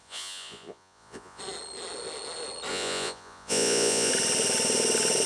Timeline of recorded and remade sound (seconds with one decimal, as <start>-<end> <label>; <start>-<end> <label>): 0.0-1.4 remade; 1.4-2.7 recorded; 2.7-4.1 remade; 4.1-5.3 recorded